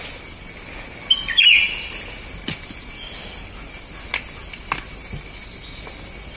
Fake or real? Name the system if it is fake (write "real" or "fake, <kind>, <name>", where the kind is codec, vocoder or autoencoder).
real